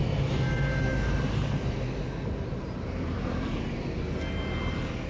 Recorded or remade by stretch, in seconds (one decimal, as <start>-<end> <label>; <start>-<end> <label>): 0.0-0.5 remade; 0.5-0.9 recorded; 0.9-4.0 remade; 4.0-5.1 recorded